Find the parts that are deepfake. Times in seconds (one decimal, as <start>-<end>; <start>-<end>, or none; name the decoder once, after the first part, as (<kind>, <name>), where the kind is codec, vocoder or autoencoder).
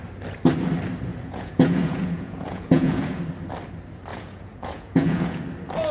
1.1-3.2 (vocoder, Vocos); 4.1-5.4